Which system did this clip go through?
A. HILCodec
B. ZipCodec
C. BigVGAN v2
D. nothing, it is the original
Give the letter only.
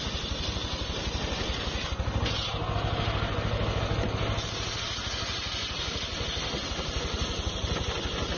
D